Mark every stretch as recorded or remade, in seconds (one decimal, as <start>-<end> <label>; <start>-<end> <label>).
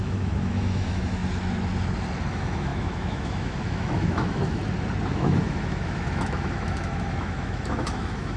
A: 0.0-1.2 remade; 1.2-2.3 recorded; 2.3-4.6 remade; 4.6-5.1 recorded; 5.1-8.4 remade